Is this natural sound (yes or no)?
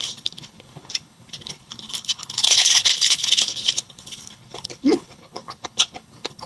no